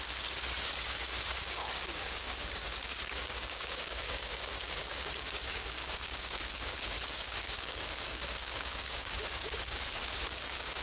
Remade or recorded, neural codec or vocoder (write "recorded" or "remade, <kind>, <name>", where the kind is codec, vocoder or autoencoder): remade, codec, DAC